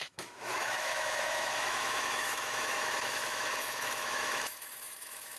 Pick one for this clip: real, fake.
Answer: fake